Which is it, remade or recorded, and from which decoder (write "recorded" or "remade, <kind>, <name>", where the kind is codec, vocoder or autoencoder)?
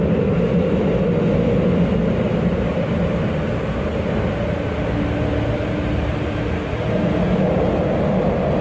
recorded